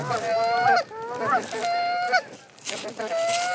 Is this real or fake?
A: real